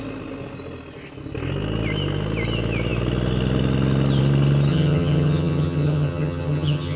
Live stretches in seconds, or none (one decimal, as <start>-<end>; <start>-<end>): 0.0-4.7